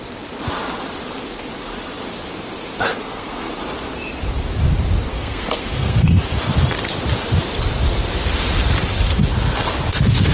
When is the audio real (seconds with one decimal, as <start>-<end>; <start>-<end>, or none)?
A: 0.0-2.9; 3.5-5.1; 6.2-10.3